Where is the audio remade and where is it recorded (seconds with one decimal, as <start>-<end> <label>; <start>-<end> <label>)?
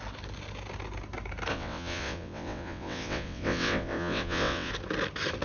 0.0-1.5 recorded; 1.5-4.7 remade; 4.7-5.4 recorded